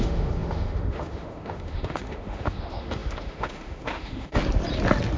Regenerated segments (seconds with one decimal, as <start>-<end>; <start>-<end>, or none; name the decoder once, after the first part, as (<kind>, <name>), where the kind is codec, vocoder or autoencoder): 0.0-4.4 (autoencoder, DAC-VAE)